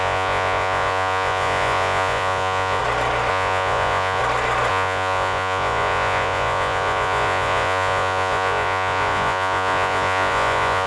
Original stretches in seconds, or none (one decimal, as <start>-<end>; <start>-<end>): 2.8-3.3; 4.2-4.7